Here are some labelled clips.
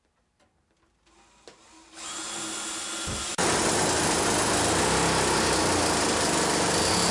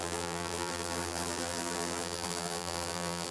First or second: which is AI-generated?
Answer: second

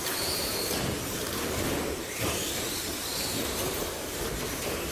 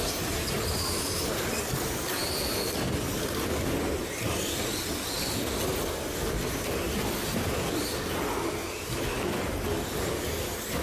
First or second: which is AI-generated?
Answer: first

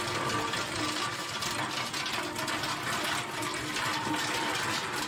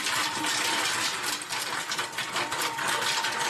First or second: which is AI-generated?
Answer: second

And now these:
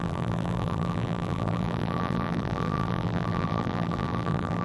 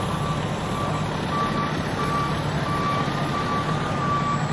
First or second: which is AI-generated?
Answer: first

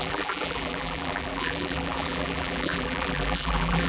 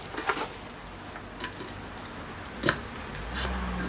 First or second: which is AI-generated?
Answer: first